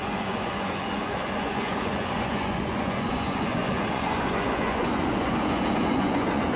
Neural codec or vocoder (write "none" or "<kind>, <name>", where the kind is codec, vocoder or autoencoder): vocoder, Vocos